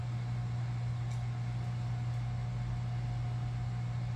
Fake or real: real